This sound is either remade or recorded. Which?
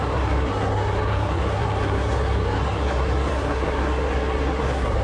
remade